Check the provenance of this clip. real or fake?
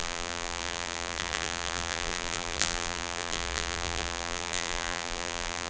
fake